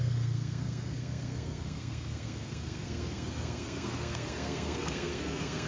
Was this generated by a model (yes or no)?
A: yes